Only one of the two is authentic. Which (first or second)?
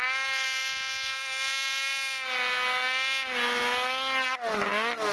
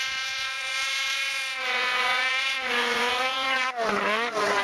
first